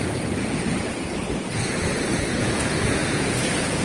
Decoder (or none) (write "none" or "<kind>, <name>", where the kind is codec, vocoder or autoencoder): vocoder, Vocos